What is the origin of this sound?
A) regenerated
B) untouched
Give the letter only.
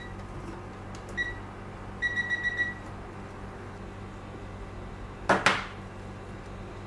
B